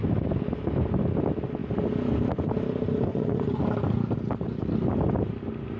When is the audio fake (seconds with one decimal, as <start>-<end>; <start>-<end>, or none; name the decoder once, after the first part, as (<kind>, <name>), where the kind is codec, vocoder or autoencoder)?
3.1-3.6 (vocoder, Vocos)